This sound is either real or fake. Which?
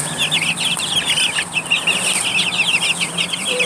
real